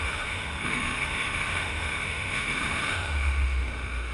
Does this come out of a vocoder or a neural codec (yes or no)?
yes